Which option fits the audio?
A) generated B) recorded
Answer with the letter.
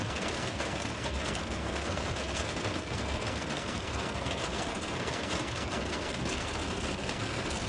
A